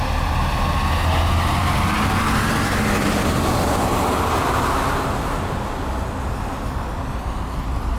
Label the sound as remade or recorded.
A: recorded